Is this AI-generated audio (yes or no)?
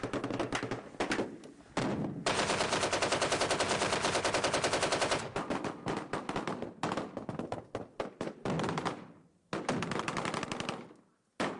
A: no